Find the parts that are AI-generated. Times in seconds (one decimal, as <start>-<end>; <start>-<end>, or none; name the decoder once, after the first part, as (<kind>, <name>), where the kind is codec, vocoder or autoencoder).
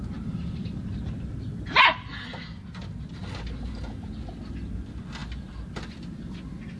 none